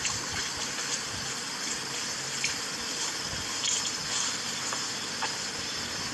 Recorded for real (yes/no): yes